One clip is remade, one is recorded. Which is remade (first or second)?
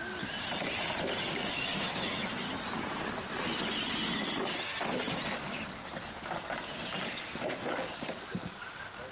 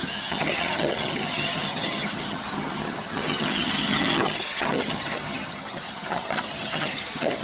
second